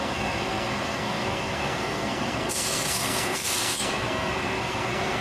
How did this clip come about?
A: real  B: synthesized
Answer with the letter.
B